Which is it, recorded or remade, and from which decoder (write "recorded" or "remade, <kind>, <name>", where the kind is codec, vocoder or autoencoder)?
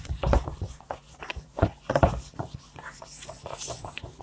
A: remade, vocoder, Vocos